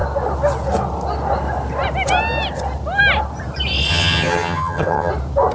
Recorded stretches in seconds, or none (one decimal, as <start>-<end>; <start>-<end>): 0.0-3.9; 5.1-5.5